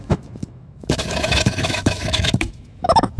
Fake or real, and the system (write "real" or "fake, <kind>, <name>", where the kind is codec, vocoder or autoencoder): fake, autoencoder, DAC-VAE